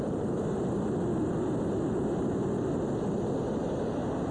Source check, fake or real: real